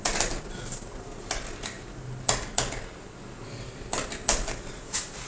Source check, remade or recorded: recorded